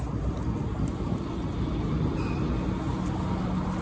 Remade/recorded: recorded